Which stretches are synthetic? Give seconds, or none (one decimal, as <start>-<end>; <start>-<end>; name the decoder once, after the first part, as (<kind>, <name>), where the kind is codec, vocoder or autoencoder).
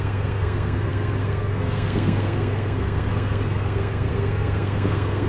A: 0.0-5.3 (codec, SNAC)